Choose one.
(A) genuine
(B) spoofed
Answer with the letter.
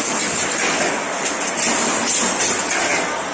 A